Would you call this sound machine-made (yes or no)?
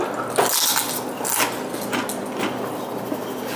no